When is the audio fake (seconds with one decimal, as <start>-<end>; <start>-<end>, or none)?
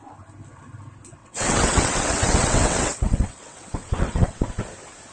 1.2-4.3